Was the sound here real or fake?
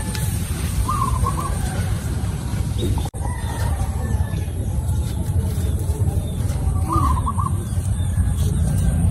fake